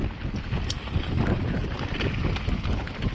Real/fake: real